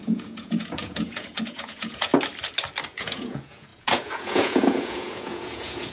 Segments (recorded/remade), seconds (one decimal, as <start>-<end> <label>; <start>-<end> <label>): 0.0-2.1 remade; 2.1-2.9 recorded; 2.9-5.9 remade